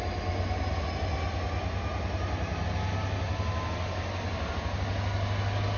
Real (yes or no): yes